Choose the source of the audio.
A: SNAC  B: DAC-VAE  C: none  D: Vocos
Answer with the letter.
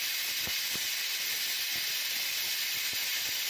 C